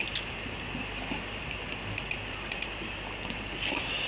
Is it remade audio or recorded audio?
recorded